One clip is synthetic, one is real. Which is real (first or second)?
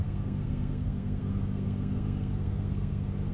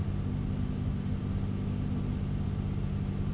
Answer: second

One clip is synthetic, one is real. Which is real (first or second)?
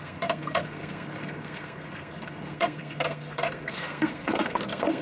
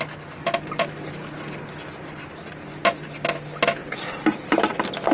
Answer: second